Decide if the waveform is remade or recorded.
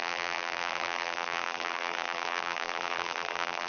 remade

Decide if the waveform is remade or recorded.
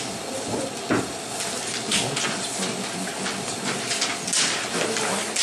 recorded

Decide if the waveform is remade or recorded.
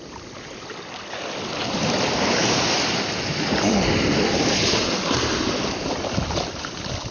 recorded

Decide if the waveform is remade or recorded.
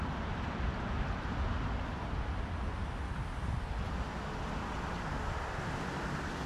recorded